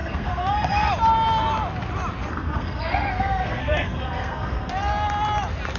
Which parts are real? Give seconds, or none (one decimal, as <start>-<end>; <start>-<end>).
0.9-2.3; 4.7-5.8